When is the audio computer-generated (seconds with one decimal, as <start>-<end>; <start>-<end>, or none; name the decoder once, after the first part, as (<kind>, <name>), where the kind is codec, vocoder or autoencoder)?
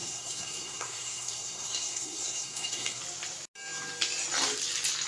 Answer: 0.0-3.0 (codec, SNAC)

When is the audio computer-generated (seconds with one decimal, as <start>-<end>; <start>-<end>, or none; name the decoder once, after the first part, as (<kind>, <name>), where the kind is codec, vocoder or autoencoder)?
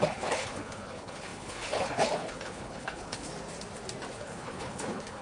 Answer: 0.0-3.3 (codec, HILCodec); 4.1-5.2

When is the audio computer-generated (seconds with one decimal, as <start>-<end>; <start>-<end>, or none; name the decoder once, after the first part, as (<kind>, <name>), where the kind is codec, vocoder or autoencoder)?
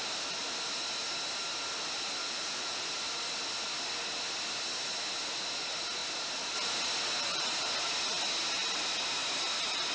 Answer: 2.2-2.8 (vocoder, Vocos)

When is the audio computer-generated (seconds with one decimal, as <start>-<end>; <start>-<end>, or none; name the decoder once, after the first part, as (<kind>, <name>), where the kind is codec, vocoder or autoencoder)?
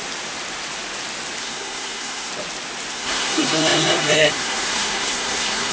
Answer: 1.4-2.3 (codec, SNAC); 2.9-5.7